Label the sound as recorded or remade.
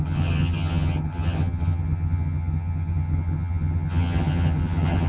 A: remade